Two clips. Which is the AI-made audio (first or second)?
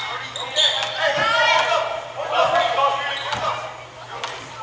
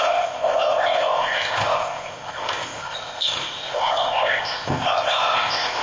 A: second